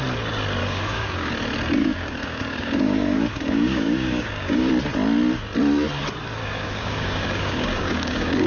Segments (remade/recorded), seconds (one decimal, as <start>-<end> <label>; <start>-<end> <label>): 0.0-0.6 recorded; 0.6-1.3 remade; 1.3-1.8 recorded; 1.8-4.7 remade; 4.7-6.4 recorded; 6.4-8.5 remade